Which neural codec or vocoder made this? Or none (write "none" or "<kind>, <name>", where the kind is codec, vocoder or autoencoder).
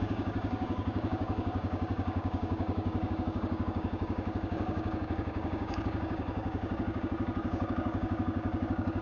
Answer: codec, DAC